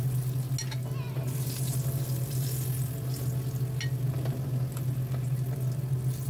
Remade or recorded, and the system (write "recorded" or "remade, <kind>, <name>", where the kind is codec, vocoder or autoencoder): recorded